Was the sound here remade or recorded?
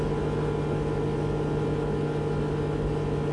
recorded